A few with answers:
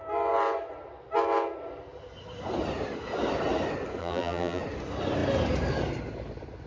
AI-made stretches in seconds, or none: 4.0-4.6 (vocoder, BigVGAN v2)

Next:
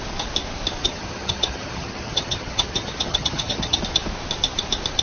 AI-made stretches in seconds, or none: 0.8-3.8 (vocoder, HiFi-GAN)

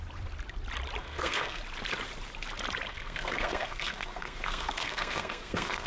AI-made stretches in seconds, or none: 1.0-1.6 (codec, SNAC); 2.9-5.9